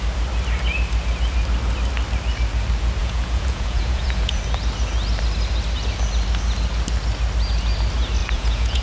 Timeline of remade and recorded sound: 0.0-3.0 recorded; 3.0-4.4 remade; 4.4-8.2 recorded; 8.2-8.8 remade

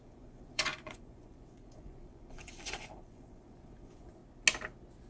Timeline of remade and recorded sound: 0.0-4.2 remade; 4.2-5.1 recorded

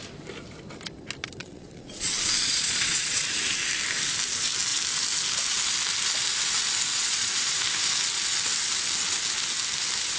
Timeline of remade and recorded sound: 0.0-1.4 recorded; 1.4-3.2 remade; 3.2-6.9 recorded; 6.9-7.6 remade; 7.6-10.2 recorded

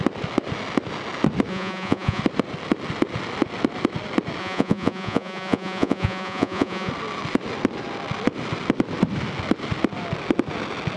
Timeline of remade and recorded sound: 0.0-1.5 recorded; 1.5-2.2 remade; 2.2-4.4 recorded; 4.4-6.9 remade; 6.9-11.0 recorded

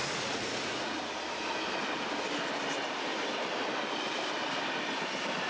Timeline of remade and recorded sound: 0.0-1.1 remade; 1.1-5.5 recorded

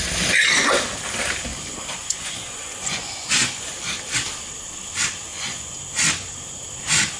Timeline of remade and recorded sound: 0.0-1.5 recorded; 1.5-3.7 remade; 3.7-5.3 recorded; 5.3-5.8 remade; 5.8-7.2 recorded

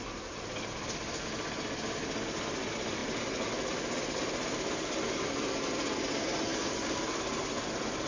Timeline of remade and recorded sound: 0.0-8.1 recorded